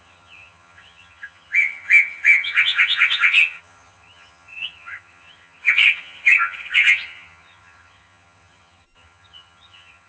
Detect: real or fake fake